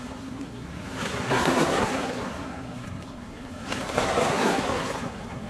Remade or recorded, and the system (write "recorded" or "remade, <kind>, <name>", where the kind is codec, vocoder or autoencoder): remade, codec, SNAC